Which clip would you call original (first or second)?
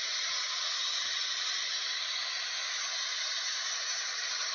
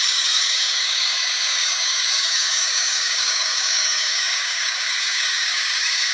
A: first